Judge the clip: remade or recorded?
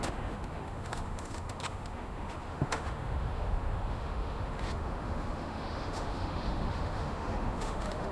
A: remade